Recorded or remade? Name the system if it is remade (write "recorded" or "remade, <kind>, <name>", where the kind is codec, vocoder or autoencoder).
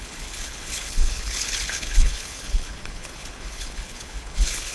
remade, codec, HILCodec